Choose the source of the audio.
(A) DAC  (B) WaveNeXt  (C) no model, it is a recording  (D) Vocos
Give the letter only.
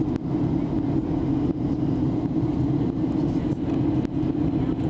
C